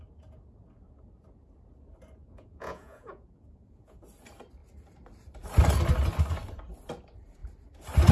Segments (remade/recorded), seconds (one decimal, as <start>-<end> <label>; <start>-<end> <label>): 0.0-2.2 recorded; 2.2-4.0 remade; 4.0-8.1 recorded